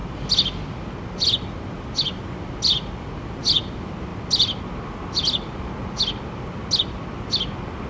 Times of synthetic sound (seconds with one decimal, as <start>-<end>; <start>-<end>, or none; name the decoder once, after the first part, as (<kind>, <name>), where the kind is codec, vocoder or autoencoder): none